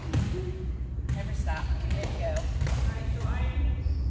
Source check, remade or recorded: recorded